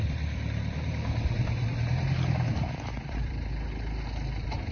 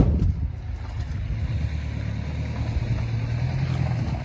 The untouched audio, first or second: second